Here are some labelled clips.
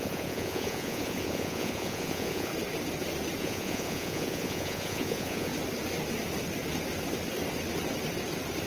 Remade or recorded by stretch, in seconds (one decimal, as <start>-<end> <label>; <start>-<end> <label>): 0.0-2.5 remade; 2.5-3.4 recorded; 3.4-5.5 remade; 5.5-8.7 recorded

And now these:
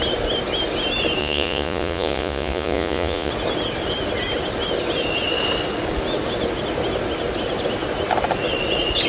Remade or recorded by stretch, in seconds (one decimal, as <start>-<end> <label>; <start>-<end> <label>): 0.0-1.2 recorded; 1.2-3.3 remade; 3.3-9.1 recorded

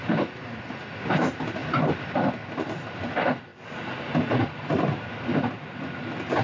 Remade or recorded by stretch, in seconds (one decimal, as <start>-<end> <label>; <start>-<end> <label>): 0.0-6.4 recorded

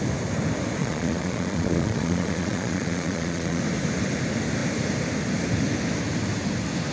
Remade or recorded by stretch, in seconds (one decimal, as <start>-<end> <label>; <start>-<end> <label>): 0.0-0.8 recorded; 0.8-3.6 remade; 3.6-6.9 recorded

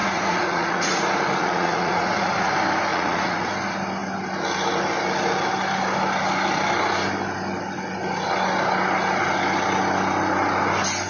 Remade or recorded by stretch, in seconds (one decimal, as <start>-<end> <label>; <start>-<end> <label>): 0.0-1.0 remade; 1.0-1.4 recorded; 1.4-2.5 remade; 2.5-2.9 recorded; 2.9-3.5 remade; 3.5-11.1 recorded